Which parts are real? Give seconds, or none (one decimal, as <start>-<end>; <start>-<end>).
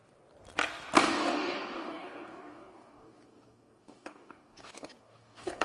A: 0.0-1.0